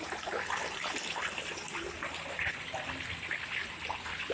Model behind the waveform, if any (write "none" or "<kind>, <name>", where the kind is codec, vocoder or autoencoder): none